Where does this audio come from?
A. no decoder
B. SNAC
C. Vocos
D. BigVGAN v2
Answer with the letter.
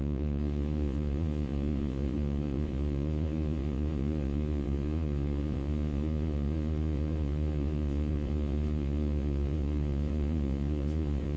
C